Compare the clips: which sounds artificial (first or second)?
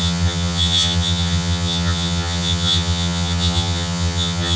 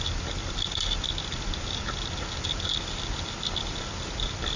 first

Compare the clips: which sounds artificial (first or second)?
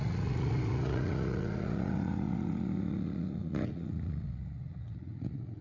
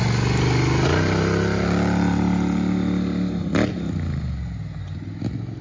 first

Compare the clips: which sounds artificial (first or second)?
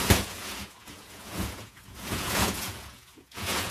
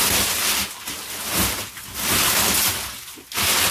first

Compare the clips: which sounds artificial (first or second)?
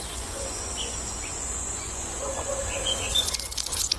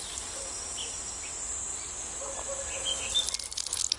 first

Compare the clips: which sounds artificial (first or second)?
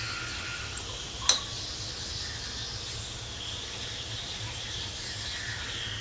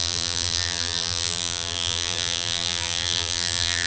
second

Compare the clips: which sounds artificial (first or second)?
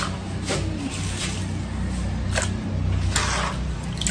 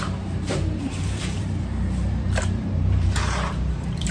second